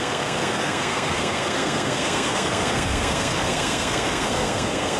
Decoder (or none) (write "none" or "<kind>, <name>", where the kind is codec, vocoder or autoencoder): codec, SNAC